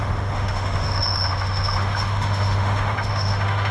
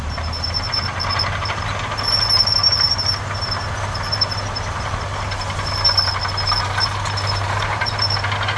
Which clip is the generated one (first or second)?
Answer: first